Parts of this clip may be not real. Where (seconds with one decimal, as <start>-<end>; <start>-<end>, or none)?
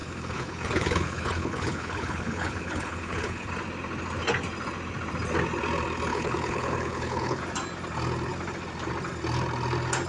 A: 0.0-3.5; 6.1-7.4